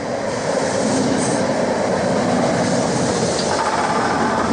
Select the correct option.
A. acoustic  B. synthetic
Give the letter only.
A